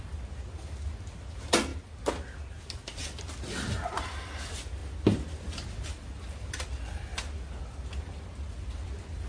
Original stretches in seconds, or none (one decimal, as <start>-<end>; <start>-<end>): 0.0-9.3